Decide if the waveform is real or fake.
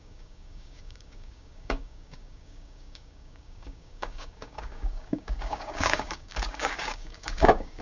fake